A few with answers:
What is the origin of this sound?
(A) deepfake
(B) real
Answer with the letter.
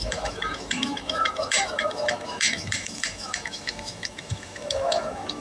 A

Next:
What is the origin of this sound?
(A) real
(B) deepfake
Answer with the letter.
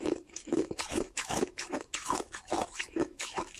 B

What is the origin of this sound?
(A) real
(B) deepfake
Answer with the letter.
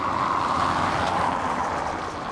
A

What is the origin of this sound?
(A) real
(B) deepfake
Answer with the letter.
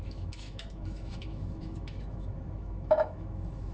B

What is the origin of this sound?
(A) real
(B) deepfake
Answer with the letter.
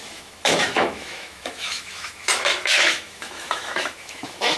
B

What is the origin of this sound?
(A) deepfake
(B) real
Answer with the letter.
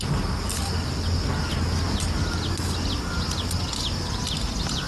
B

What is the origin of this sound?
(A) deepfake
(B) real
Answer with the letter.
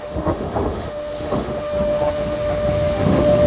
A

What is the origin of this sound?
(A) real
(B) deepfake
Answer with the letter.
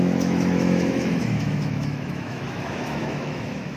B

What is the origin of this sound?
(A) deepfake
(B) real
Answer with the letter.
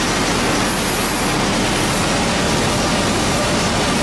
B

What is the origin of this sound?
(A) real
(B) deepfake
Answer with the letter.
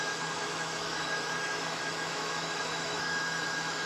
B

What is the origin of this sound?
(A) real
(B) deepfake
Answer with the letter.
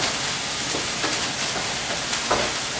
A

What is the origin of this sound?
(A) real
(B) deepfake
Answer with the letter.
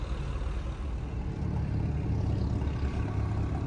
A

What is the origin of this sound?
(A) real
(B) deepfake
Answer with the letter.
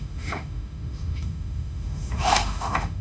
B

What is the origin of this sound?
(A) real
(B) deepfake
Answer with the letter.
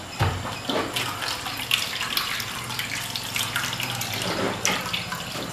A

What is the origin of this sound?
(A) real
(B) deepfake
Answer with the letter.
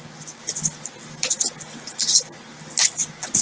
A